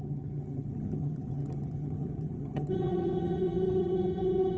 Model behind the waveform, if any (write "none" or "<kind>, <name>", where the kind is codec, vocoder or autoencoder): vocoder, HiFi-GAN